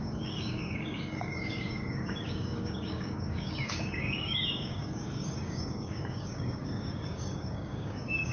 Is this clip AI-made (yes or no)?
yes